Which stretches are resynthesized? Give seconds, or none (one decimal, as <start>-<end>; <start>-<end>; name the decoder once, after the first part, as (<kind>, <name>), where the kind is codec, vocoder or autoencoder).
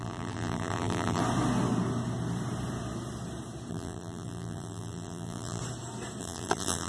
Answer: 0.0-1.2 (vocoder, BigVGAN v2); 3.7-5.6; 6.2-6.9